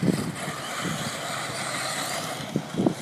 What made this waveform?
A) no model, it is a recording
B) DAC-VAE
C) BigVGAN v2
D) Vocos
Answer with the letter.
A